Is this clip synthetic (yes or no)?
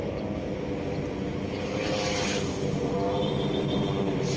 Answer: no